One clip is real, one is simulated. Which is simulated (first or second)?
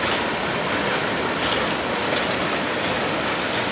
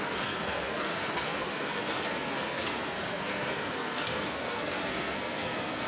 second